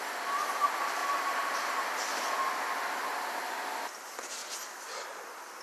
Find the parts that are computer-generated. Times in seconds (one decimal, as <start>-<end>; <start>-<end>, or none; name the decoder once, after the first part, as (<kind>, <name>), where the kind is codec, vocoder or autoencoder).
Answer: none